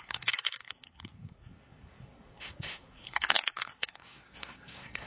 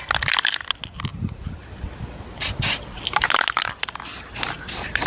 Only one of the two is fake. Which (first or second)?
first